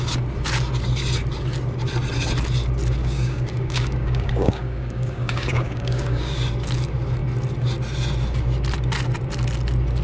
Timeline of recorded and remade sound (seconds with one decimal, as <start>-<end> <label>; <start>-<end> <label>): 0.0-3.0 recorded; 3.0-6.4 remade; 6.4-10.0 recorded